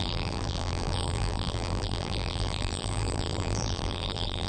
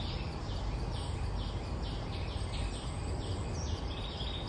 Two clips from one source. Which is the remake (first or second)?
first